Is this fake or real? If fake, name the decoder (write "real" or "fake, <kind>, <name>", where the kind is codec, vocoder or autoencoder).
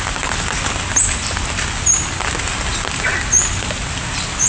real